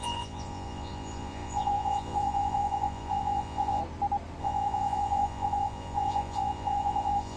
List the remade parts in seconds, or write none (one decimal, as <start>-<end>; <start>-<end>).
0.0-3.8; 4.4-7.4